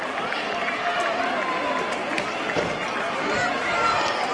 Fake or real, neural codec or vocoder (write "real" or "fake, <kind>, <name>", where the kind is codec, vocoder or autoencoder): real